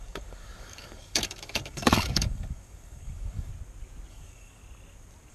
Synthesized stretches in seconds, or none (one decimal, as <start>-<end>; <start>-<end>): 0.0-3.5; 4.1-4.6